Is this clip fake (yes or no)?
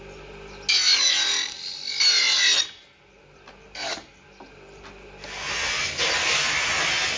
no